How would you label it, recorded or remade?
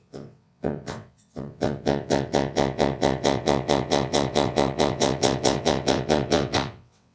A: remade